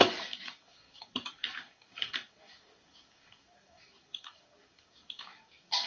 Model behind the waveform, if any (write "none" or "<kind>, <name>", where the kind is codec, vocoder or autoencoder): codec, DAC